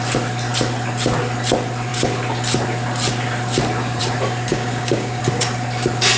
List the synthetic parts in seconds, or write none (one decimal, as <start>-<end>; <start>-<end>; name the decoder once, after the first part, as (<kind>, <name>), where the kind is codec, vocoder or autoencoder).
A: 4.5-5.2 (codec, DAC)